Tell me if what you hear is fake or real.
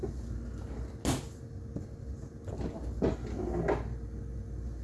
real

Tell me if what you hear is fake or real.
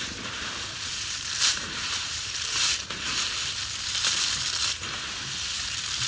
fake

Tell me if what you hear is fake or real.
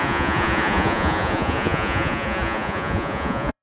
fake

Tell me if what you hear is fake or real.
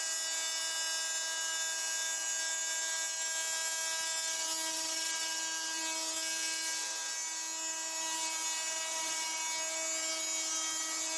real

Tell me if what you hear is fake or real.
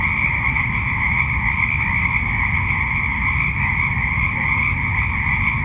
real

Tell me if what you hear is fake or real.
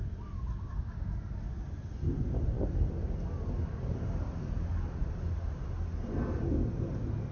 real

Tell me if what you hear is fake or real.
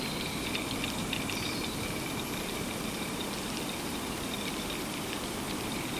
real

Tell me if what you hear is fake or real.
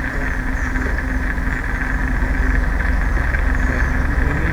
real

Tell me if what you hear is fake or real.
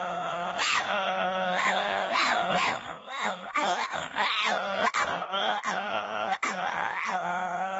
fake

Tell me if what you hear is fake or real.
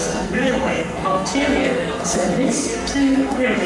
fake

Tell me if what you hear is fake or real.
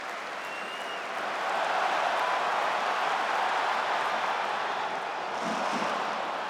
real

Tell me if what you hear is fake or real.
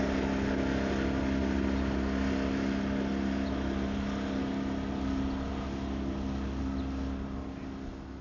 real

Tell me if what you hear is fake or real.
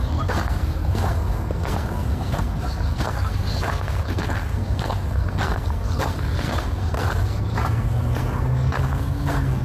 fake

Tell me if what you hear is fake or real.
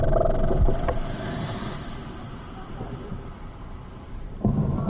fake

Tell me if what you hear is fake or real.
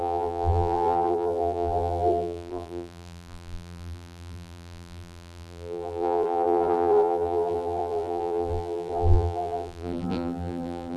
fake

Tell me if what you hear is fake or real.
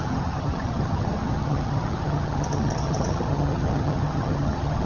fake